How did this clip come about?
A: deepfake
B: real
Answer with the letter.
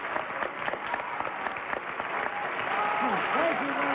B